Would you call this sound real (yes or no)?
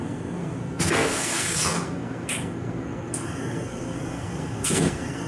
no